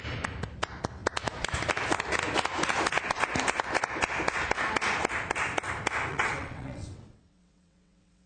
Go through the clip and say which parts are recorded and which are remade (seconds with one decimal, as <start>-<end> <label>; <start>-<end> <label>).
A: 0.0-6.1 recorded; 6.1-8.3 remade